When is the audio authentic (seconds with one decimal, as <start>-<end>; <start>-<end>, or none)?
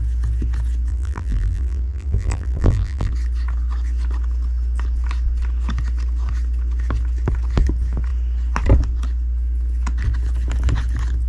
0.0-0.9; 3.1-11.3